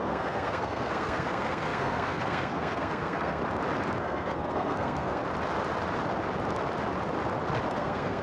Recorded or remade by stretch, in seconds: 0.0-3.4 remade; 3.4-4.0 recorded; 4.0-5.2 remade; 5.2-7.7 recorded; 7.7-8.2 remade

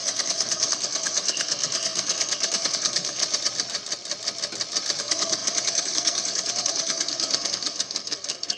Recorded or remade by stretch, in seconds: 0.0-3.2 remade; 3.2-5.0 recorded; 5.0-8.6 remade

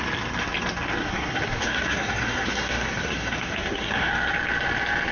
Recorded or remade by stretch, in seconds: 0.0-1.0 recorded; 1.0-4.1 remade; 4.1-5.1 recorded

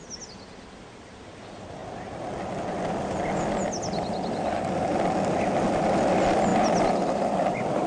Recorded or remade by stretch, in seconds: 0.0-7.9 recorded

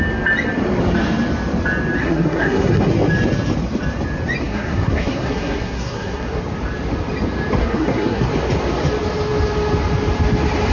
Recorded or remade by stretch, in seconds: 0.0-2.0 recorded; 2.0-2.9 remade; 2.9-4.4 recorded; 4.4-6.4 remade; 6.4-7.6 recorded; 7.6-8.3 remade; 8.3-10.7 recorded

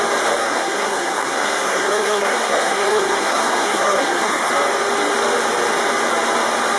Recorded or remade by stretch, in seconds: 0.0-0.4 recorded; 0.4-4.5 remade; 4.5-6.8 recorded

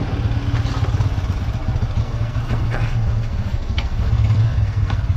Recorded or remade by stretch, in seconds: 0.0-2.0 recorded; 2.0-5.2 remade